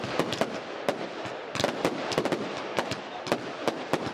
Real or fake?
real